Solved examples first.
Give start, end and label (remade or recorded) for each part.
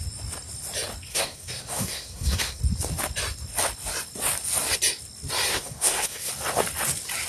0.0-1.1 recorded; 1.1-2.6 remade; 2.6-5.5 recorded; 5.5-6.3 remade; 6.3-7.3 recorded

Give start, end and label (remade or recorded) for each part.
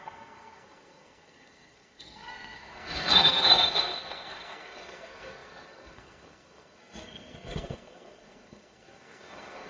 0.0-9.7 remade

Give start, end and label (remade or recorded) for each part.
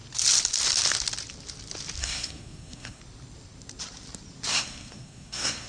0.0-2.0 recorded; 2.0-3.0 remade; 3.0-4.5 recorded; 4.5-5.7 remade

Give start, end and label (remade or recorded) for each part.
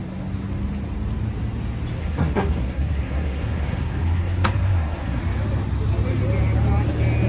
0.0-2.0 recorded; 2.0-5.2 remade; 5.2-7.3 recorded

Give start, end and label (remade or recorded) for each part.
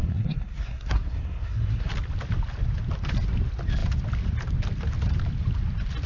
0.0-1.9 remade; 1.9-6.1 recorded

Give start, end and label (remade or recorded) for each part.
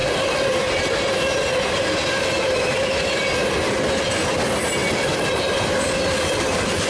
0.0-6.9 recorded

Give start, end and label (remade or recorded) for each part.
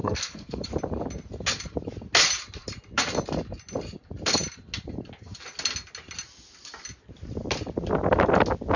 0.0-0.7 remade; 0.7-8.8 recorded